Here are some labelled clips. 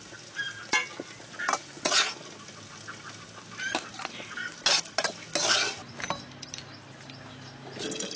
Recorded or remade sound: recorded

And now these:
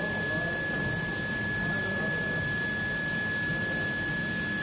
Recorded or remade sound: recorded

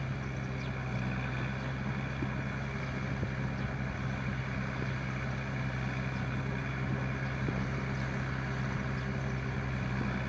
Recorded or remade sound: recorded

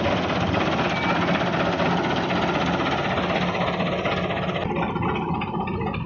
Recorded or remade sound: recorded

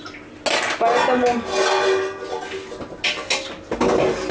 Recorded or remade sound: recorded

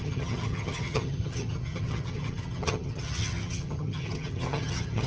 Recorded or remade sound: remade